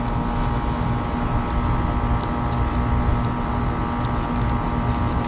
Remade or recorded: recorded